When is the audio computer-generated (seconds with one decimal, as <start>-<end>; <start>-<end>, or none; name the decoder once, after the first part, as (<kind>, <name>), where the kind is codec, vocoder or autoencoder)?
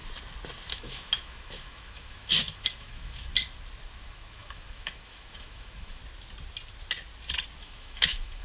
0.7-3.3 (autoencoder, DAC-VAE); 4.0-6.0; 7.6-8.4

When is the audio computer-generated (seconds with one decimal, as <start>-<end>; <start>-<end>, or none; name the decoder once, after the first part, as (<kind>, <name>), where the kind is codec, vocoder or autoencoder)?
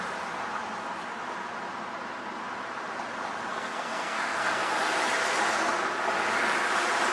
3.5-4.7 (codec, SNAC)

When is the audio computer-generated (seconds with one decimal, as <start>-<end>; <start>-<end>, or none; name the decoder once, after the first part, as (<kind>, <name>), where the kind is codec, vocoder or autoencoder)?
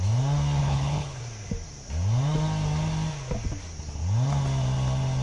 0.6-1.2 (codec, HILCodec)